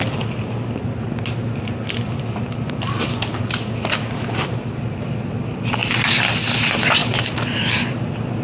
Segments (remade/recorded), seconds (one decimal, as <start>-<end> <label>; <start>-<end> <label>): 0.0-8.4 recorded